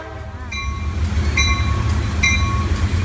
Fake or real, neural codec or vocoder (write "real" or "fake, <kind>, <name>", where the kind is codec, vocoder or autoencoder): real